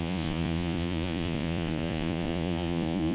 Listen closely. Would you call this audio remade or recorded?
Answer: remade